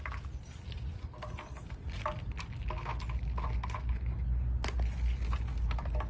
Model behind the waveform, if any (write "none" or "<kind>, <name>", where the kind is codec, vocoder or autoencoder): none